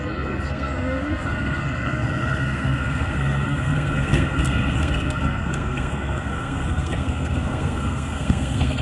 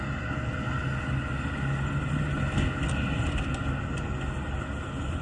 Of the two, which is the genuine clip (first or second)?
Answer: second